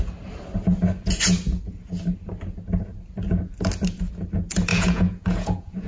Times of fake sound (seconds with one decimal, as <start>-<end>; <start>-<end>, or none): 4.7-5.9